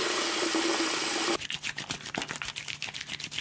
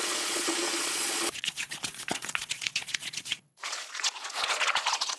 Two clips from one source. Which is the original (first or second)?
first